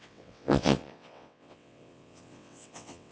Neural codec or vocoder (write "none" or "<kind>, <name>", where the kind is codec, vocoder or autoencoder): vocoder, WaveNeXt